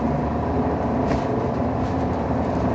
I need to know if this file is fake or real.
fake